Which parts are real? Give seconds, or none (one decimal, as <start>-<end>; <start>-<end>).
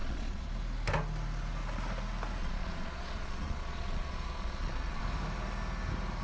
0.5-2.4; 5.0-6.2